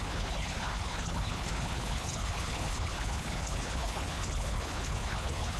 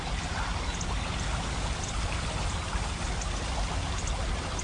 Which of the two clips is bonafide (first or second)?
second